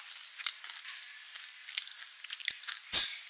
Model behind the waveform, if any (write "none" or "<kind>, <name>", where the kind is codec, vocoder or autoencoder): none